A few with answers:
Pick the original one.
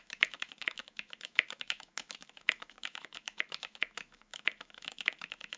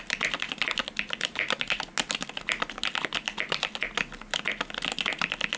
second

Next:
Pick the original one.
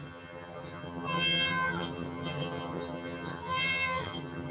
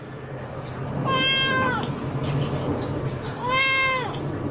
second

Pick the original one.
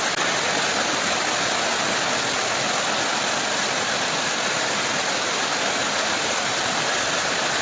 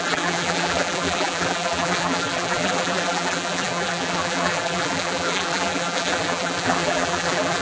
first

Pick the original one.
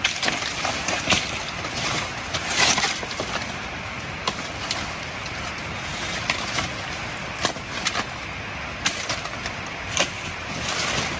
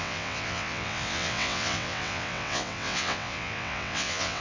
first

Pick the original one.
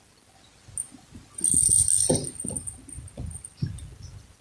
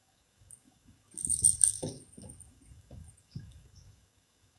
first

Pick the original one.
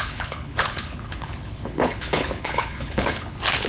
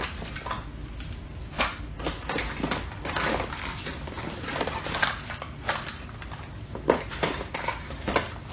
second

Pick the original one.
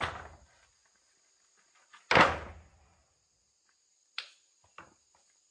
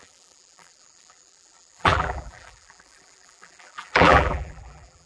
first